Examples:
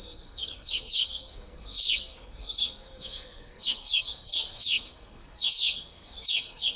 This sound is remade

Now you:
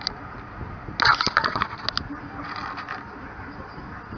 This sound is recorded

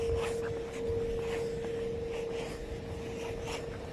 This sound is recorded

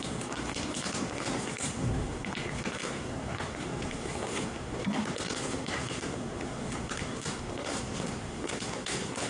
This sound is remade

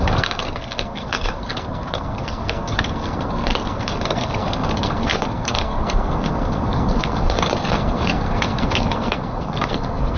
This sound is remade